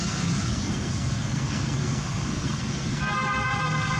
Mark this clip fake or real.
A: fake